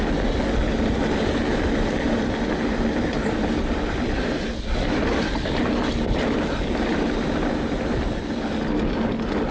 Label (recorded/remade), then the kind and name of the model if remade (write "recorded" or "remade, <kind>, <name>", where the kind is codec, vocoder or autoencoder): recorded